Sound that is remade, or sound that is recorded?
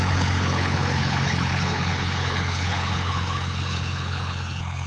remade